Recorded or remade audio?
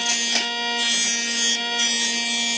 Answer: recorded